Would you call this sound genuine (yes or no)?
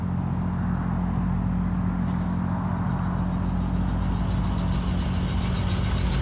yes